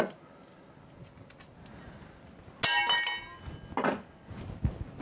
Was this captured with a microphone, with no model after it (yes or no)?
yes